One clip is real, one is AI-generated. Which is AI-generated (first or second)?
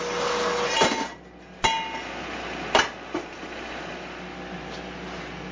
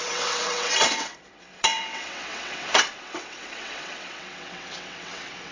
second